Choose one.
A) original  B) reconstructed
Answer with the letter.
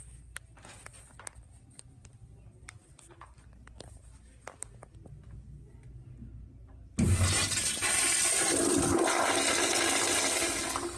A